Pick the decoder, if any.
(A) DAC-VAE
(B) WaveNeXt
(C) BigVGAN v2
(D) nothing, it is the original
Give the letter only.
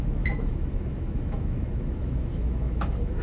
A